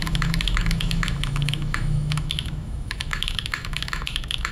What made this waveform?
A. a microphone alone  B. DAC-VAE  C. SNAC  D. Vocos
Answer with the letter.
B